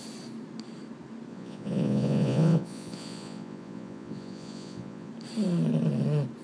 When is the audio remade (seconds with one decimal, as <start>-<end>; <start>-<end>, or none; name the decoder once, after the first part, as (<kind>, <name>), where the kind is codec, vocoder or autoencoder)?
1.3-5.1 (vocoder, Vocos)